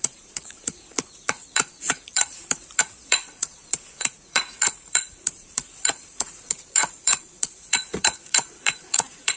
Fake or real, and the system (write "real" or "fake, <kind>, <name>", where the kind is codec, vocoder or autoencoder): fake, vocoder, Vocos